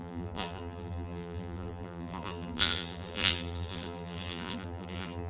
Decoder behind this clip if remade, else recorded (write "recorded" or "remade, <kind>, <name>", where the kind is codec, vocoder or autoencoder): remade, vocoder, BigVGAN v2